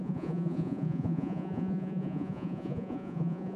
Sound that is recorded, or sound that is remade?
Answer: remade